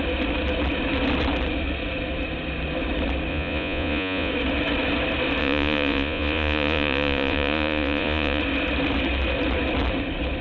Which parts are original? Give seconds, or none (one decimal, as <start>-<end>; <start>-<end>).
0.0-3.3; 4.3-5.4; 8.4-10.4

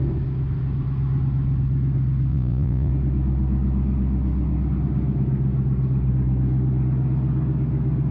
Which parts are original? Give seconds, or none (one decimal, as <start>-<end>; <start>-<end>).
0.0-2.3; 2.9-8.1

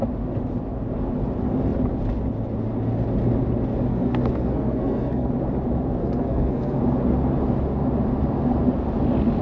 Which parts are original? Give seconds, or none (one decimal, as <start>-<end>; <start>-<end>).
0.0-3.9; 5.3-6.0; 6.8-9.4